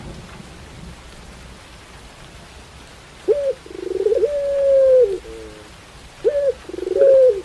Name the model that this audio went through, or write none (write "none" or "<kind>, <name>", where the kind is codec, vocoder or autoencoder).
vocoder, BigVGAN v2